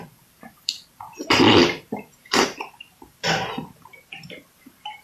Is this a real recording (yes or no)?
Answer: no